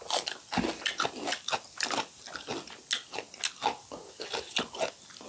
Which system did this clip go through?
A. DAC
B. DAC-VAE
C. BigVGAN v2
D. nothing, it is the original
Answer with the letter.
D